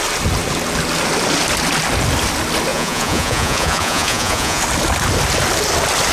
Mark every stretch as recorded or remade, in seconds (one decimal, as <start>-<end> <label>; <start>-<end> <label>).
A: 0.0-2.7 recorded; 2.7-4.6 remade; 4.6-6.1 recorded